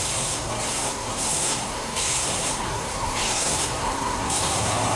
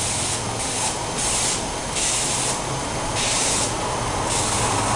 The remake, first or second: first